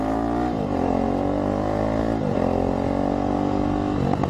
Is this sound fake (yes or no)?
no